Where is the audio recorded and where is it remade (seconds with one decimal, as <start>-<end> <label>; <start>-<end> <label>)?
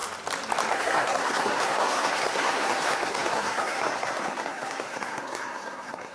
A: 0.0-0.7 recorded; 0.7-6.1 remade